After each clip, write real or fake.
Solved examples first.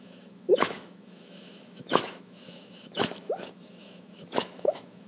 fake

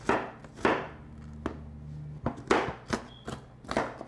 real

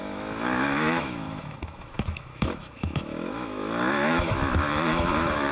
fake